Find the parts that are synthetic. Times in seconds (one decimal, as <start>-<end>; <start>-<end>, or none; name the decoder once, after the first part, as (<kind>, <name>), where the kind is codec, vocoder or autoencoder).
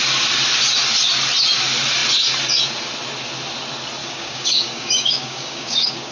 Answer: 4.0-6.1 (codec, DAC)